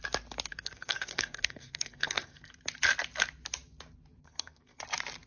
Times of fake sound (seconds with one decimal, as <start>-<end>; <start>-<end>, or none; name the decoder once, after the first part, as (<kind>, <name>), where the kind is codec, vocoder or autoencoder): 0.5-2.5 (codec, SNAC); 4.2-4.8